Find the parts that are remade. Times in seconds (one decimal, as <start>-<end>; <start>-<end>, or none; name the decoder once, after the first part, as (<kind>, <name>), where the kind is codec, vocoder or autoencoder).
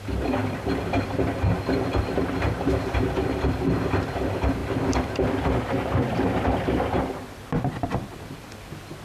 none